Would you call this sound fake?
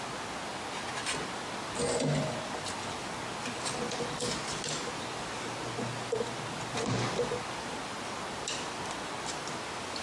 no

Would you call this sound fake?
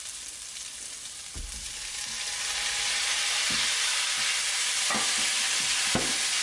no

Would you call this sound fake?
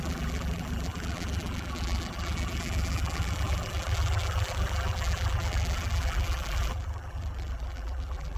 yes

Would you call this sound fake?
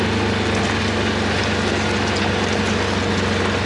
no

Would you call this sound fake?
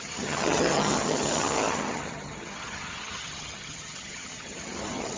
yes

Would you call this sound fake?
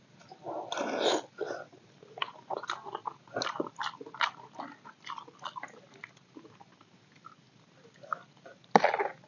no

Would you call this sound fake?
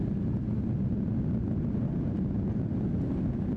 no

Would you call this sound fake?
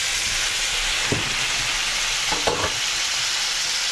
no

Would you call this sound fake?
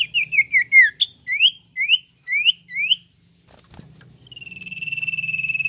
no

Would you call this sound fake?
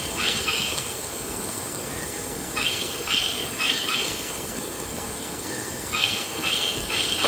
yes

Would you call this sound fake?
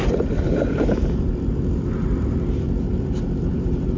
yes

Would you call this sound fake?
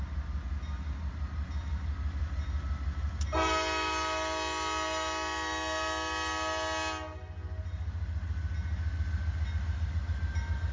no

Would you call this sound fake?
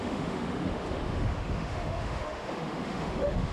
yes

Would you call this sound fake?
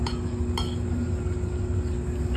no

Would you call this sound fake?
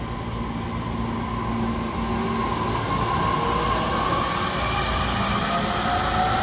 no